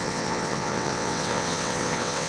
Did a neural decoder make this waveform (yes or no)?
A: yes